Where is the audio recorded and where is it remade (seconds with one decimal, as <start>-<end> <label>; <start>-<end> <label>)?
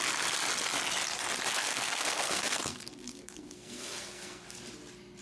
0.0-1.5 recorded; 1.5-4.6 remade; 4.6-5.2 recorded